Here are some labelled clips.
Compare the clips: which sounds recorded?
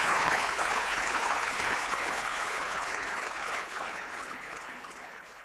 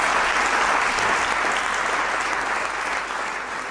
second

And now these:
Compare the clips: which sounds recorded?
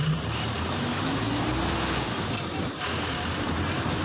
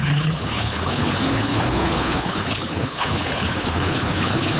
first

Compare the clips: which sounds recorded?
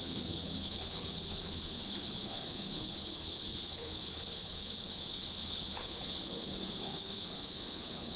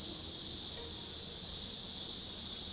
second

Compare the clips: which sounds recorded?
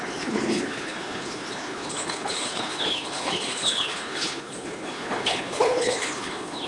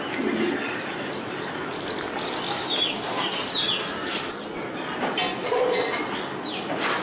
second